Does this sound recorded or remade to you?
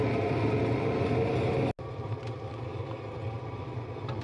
recorded